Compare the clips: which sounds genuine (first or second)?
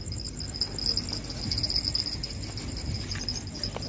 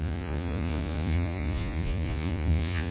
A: first